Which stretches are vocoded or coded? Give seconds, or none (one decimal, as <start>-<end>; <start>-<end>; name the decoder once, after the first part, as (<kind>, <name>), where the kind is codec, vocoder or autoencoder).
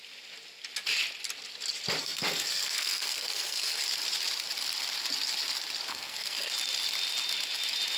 2.0-3.8 (codec, SNAC); 5.9-6.5